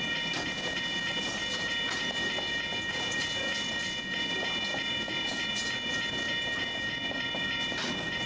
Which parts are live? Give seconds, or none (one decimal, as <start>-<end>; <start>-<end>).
0.0-8.3